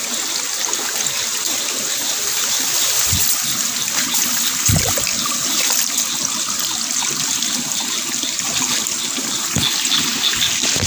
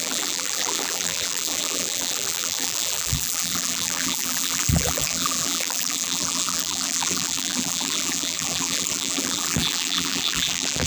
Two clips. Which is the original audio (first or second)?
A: first